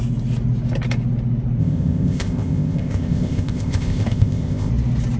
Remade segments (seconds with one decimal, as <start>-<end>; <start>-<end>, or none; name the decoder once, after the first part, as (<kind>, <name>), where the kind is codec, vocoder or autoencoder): 1.6-4.7 (codec, ZipCodec)